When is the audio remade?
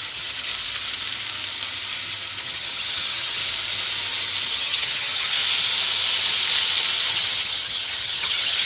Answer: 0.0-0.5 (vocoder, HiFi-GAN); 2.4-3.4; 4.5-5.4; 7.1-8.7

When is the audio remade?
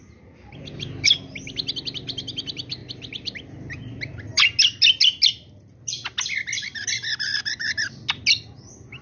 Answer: none